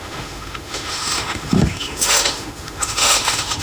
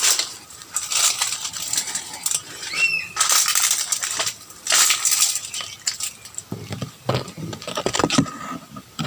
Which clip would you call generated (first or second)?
first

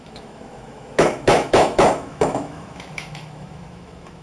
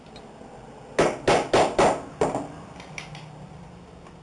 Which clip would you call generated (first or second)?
first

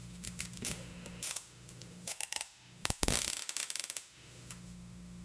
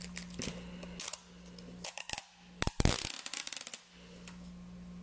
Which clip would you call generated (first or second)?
first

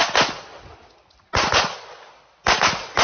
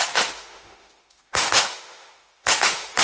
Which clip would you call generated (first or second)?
second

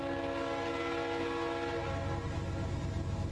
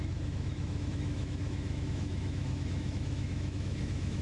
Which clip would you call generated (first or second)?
second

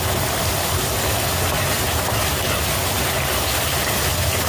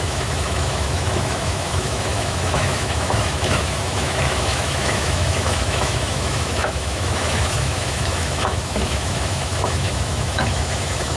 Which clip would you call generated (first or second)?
second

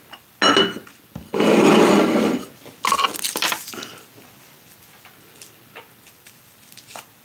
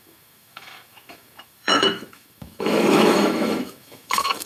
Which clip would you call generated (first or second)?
second